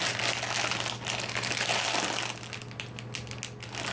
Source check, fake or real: real